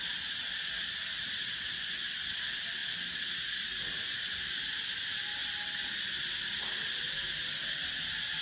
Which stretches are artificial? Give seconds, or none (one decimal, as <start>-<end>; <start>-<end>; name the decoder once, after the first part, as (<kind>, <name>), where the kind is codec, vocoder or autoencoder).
none